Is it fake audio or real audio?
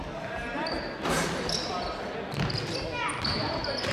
real